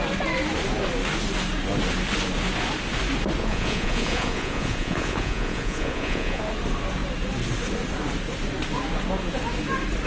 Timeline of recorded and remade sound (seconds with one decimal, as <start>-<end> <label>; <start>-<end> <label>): 0.0-3.4 recorded; 3.4-6.4 remade; 6.4-10.1 recorded